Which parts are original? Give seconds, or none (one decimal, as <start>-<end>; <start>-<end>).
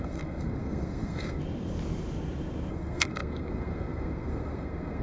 1.4-2.7